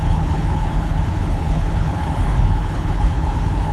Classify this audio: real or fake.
fake